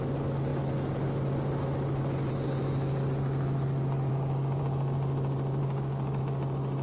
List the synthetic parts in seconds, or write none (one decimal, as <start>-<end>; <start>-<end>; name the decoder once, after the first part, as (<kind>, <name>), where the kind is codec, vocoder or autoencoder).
4.1-4.6 (codec, DAC); 5.6-6.2